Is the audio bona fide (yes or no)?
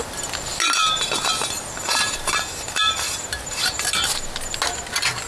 yes